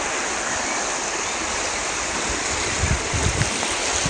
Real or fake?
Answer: real